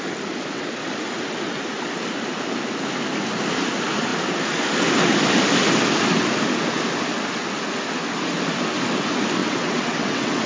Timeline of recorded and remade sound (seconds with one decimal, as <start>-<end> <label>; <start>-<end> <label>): 0.0-9.4 recorded; 9.4-10.5 remade